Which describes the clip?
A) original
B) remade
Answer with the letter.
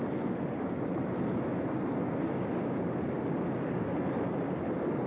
A